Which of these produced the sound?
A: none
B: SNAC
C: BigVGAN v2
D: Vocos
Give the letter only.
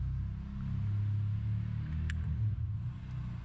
A